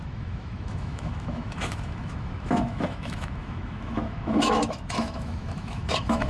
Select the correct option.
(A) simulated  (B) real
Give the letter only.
A